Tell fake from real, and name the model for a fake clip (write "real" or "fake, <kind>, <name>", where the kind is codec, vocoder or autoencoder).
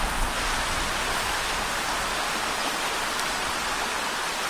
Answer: real